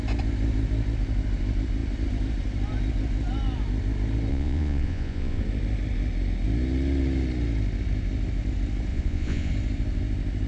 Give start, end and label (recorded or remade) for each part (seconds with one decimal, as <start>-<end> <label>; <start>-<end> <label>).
0.0-4.3 recorded; 4.3-5.4 remade; 5.4-8.9 recorded; 8.9-9.5 remade; 9.5-10.5 recorded